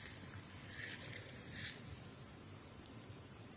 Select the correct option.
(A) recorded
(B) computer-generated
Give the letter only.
A